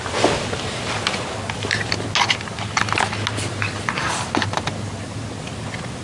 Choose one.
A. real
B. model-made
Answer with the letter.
A